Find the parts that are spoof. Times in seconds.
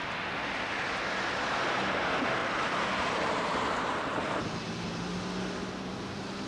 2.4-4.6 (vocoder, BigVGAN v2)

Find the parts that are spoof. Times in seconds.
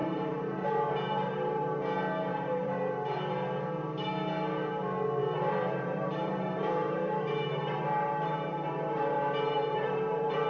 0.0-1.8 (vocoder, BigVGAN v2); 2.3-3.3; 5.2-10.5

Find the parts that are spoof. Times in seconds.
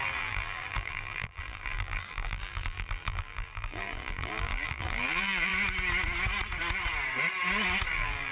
0.0-5.5 (vocoder, BigVGAN v2); 7.9-8.3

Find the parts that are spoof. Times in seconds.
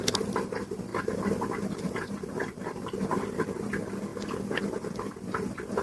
none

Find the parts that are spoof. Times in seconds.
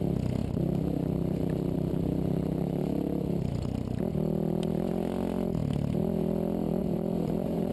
0.4-4.0 (vocoder, BigVGAN v2); 6.8-7.7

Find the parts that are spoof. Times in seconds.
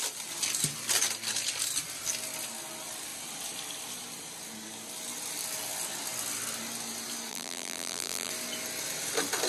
7.3-8.3 (vocoder, BigVGAN v2)